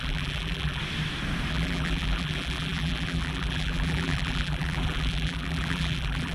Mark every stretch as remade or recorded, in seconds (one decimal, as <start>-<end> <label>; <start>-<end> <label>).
0.0-0.8 remade; 0.8-1.5 recorded; 1.5-6.3 remade